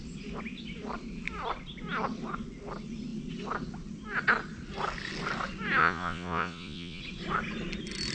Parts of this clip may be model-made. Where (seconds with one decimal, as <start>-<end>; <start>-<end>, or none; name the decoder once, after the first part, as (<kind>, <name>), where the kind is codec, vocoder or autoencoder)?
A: 5.8-7.0 (vocoder, Vocos)